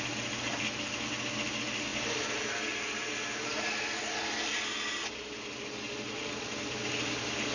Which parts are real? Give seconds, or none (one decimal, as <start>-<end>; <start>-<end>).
0.0-7.5